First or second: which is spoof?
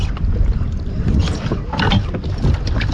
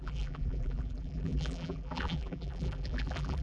second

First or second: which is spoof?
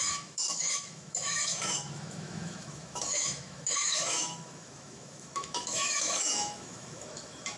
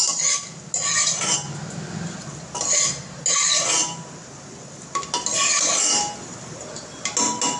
first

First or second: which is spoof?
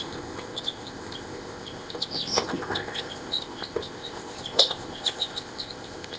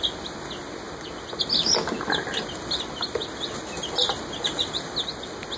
first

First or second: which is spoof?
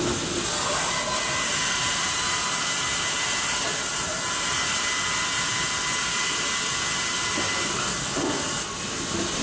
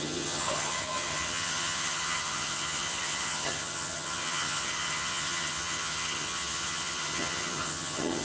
second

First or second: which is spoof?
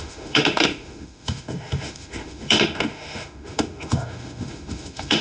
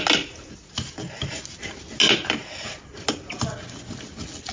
first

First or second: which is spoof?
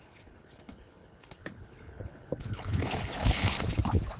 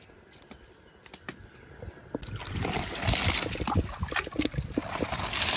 first